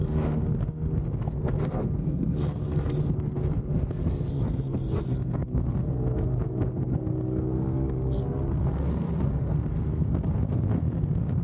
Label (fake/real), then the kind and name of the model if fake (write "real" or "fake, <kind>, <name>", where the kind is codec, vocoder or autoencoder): fake, codec, SNAC